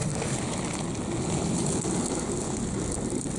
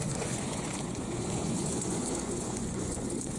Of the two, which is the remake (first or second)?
second